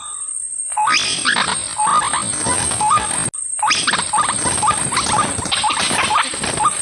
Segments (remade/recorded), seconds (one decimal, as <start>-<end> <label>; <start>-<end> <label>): 0.0-6.8 recorded